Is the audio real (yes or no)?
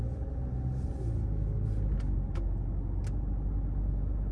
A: yes